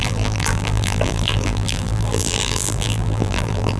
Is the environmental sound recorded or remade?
remade